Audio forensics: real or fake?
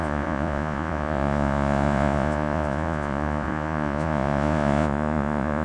fake